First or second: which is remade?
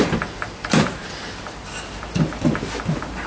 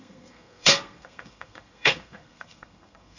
second